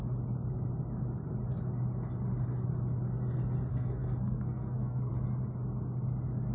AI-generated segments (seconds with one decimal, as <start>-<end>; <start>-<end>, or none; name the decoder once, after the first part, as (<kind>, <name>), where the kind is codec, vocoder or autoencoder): 3.7-5.1 (codec, SNAC)